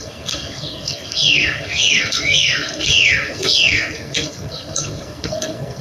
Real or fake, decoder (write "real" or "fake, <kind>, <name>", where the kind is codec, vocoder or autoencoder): fake, codec, SNAC